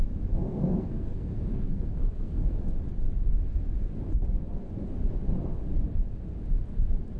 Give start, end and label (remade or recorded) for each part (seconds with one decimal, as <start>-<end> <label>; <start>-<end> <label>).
0.0-0.4 recorded; 0.4-2.6 remade; 2.6-7.2 recorded

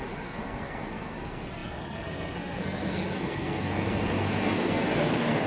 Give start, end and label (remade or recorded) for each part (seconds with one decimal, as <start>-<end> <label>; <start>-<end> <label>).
0.0-5.5 remade

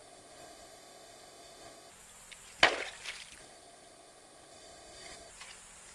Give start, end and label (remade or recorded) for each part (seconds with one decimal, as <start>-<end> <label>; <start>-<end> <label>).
0.0-1.9 remade; 1.9-3.4 recorded; 3.4-5.3 remade; 5.3-5.9 recorded

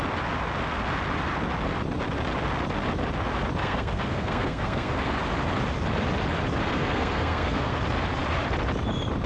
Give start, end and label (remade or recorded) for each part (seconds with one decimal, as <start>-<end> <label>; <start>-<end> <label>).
0.0-3.6 recorded; 3.6-5.0 remade; 5.0-6.6 recorded; 6.6-7.8 remade; 7.8-9.3 recorded